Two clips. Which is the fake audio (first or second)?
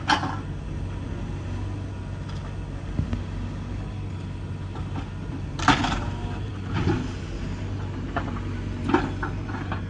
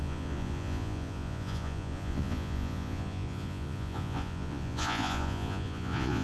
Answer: second